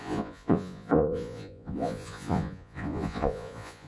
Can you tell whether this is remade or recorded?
remade